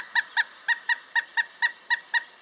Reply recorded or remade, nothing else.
recorded